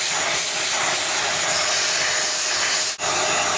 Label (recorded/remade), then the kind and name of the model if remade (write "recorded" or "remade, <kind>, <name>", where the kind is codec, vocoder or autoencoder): recorded